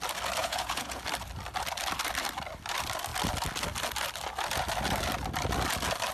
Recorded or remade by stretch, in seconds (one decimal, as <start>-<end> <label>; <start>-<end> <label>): 0.0-0.4 recorded; 0.4-1.0 remade; 1.0-6.1 recorded